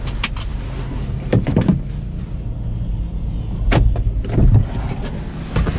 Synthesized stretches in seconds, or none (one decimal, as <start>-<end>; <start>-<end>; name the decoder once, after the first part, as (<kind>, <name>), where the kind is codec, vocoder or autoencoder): none